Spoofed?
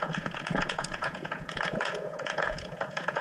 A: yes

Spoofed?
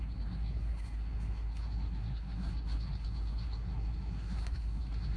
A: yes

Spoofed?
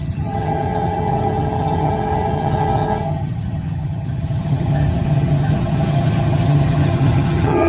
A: yes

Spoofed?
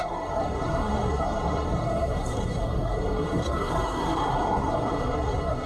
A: yes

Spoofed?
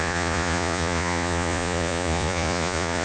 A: yes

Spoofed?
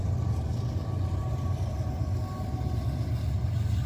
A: no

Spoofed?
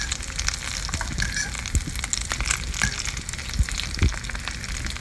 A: no